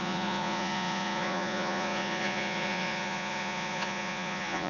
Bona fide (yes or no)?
no